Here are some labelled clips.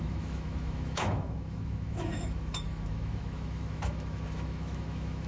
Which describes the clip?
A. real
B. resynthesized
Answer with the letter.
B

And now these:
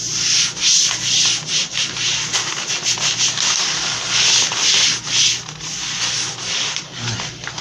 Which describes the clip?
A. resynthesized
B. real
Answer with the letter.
B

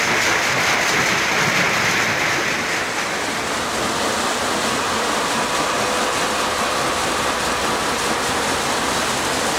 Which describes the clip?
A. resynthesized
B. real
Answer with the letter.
B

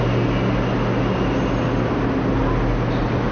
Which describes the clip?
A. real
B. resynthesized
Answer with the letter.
A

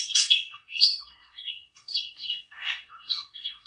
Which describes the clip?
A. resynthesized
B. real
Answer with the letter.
A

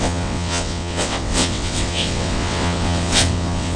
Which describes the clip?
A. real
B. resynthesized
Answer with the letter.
B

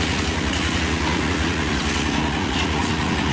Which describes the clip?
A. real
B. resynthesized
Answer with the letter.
B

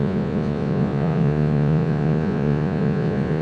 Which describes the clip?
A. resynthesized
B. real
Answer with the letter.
A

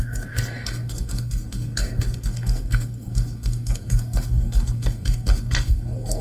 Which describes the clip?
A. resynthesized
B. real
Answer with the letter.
A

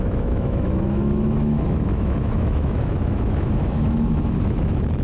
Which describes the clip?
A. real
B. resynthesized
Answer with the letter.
B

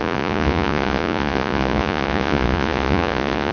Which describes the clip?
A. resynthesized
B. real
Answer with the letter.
A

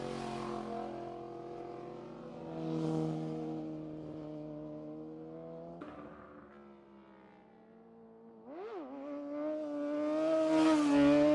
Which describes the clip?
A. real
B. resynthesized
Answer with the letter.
A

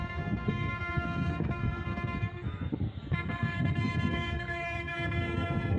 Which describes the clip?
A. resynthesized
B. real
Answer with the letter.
A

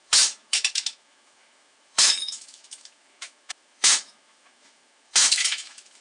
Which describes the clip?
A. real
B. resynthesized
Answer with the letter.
B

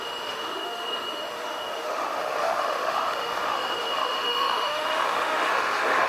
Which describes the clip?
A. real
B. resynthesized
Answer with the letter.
B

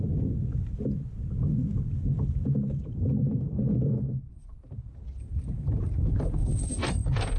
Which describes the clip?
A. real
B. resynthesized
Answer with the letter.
A